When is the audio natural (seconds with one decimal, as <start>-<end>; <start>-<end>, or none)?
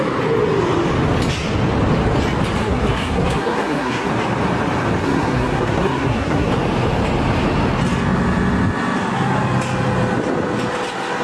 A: 0.0-2.6; 4.1-5.0; 6.5-11.2